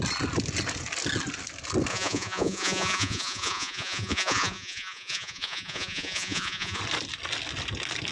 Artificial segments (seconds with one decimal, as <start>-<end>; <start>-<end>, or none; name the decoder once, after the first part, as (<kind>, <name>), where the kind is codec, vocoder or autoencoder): 1.9-6.8 (vocoder, Vocos)